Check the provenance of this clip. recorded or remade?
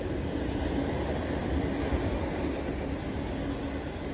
recorded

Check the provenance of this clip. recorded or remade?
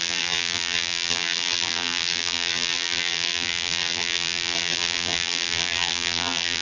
remade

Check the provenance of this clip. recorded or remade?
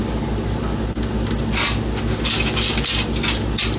recorded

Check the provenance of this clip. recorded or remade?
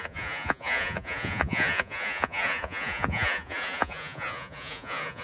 remade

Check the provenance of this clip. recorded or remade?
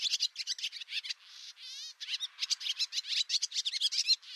recorded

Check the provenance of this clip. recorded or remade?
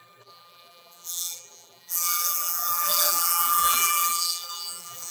remade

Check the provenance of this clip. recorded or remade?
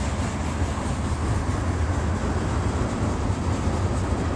recorded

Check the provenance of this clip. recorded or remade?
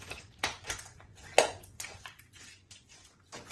remade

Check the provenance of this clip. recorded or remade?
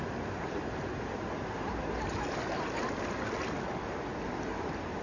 recorded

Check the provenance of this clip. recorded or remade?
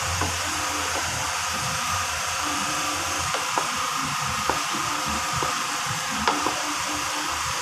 remade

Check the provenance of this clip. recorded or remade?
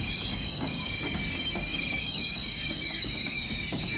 remade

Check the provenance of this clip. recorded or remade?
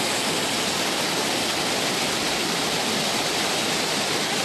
recorded